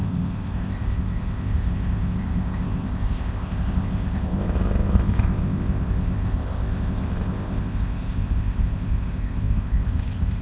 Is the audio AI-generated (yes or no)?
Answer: yes